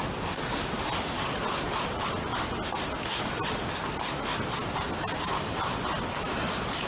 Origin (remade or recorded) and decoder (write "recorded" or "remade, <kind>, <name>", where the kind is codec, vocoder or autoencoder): recorded